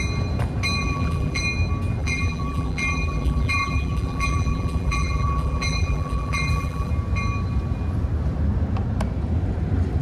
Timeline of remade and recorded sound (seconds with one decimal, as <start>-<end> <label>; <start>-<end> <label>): 0.0-0.8 recorded; 0.8-1.4 remade; 1.4-2.0 recorded; 2.0-6.9 remade; 6.9-10.0 recorded